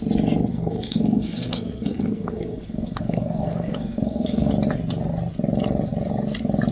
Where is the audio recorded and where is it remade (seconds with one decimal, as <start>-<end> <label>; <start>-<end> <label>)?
0.0-0.5 recorded; 0.5-4.5 remade; 4.5-6.7 recorded